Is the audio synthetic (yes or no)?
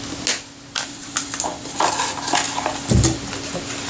no